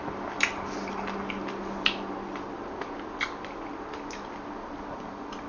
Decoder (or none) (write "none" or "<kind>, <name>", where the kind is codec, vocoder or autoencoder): none